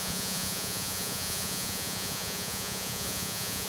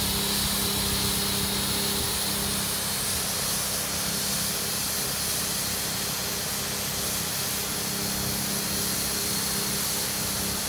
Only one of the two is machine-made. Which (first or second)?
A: first